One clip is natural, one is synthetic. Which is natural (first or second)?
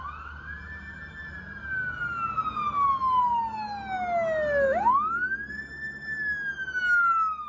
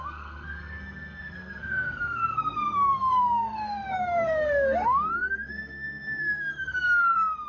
first